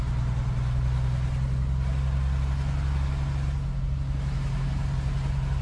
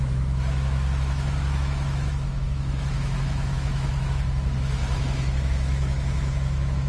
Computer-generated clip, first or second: second